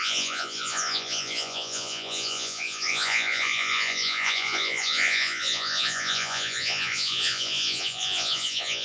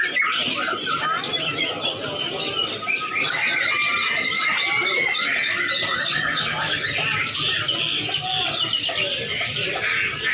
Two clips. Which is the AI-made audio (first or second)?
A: first